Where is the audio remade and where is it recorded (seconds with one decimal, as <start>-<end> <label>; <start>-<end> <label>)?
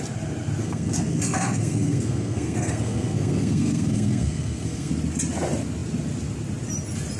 0.0-0.6 recorded; 0.6-4.9 remade; 4.9-7.2 recorded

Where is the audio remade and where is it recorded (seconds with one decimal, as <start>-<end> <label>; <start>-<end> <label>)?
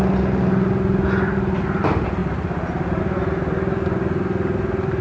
0.0-5.0 recorded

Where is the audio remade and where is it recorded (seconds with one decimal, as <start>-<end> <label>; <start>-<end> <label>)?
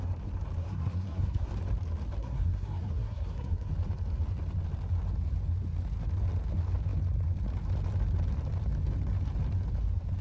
0.0-0.6 recorded; 0.6-1.5 remade; 1.5-2.2 recorded; 2.2-3.7 remade; 3.7-10.2 recorded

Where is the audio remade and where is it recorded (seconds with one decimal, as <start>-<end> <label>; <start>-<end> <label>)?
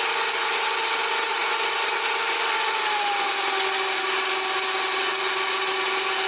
0.0-6.3 recorded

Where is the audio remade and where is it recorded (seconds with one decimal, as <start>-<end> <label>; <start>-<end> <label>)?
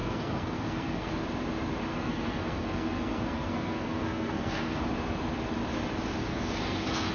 0.0-1.1 remade; 1.1-1.9 recorded; 1.9-4.8 remade; 4.8-6.2 recorded; 6.2-7.1 remade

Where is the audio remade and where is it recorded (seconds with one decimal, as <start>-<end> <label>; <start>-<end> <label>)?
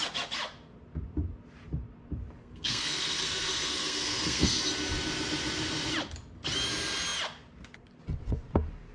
0.0-2.4 recorded; 2.4-4.6 remade; 4.6-8.9 recorded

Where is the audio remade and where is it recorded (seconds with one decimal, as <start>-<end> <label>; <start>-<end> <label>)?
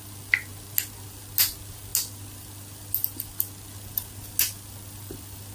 0.0-5.5 recorded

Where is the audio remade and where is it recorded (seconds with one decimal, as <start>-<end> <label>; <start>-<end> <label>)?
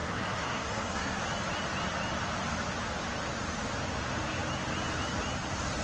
0.0-1.2 remade; 1.2-5.8 recorded